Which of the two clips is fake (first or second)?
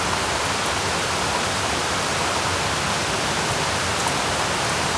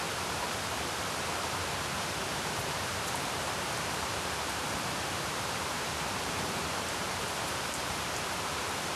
second